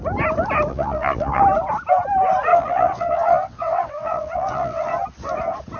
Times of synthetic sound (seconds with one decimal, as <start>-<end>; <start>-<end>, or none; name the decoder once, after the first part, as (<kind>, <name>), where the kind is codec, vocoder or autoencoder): 0.7-1.4 (vocoder, WaveNeXt); 2.5-4.9